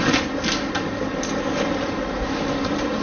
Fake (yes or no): no